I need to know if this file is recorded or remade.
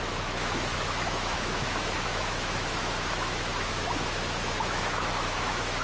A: remade